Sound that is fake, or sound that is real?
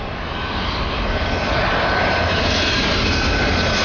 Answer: real